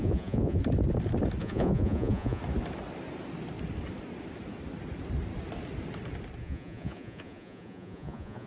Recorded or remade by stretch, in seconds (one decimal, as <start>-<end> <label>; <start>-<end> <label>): 0.0-0.6 remade; 0.6-1.4 recorded; 1.4-2.4 remade; 2.4-6.4 recorded; 6.4-8.5 remade